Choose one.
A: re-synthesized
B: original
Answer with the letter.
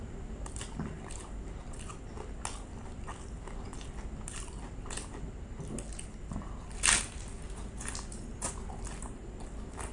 B